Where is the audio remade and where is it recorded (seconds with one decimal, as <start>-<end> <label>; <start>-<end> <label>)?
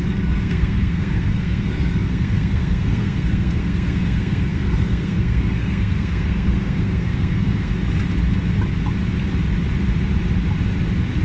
0.0-7.7 remade; 7.7-11.2 recorded